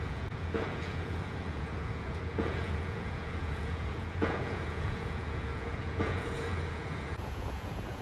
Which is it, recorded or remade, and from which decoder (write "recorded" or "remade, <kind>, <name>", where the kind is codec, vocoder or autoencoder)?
remade, vocoder, Vocos